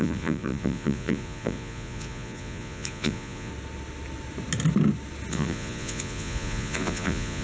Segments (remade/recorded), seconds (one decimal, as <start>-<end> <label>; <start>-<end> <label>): 0.0-3.5 remade; 3.5-5.3 recorded; 5.3-7.4 remade